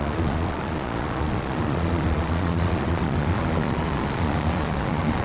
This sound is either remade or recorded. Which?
remade